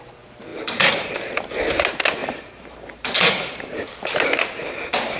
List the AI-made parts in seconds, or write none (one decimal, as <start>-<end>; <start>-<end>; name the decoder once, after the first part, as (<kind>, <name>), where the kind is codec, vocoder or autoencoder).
0.5-1.1 (vocoder, BigVGAN v2); 2.2-3.6